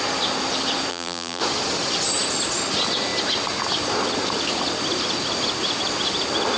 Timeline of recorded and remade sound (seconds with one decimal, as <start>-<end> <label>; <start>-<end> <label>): 0.0-0.9 recorded; 0.9-1.4 remade; 1.4-6.6 recorded